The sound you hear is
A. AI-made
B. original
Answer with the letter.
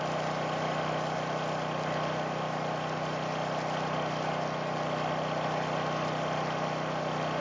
B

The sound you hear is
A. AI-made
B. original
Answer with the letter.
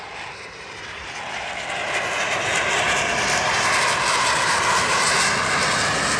B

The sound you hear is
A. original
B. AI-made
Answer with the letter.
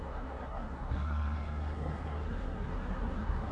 B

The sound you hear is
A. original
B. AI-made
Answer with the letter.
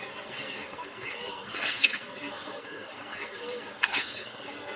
B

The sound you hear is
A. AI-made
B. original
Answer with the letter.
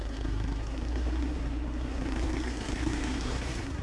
A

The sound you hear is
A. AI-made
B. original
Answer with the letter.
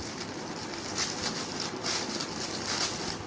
B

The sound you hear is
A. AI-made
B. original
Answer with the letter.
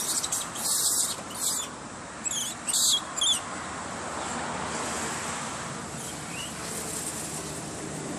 B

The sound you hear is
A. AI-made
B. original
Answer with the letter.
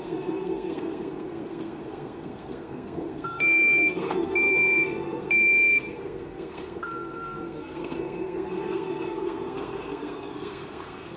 A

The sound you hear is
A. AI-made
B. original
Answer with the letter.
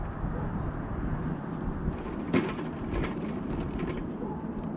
B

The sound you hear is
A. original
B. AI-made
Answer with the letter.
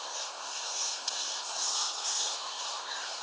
B